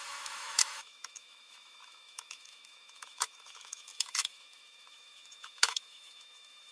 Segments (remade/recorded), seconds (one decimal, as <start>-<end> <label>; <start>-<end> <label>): 0.0-6.7 remade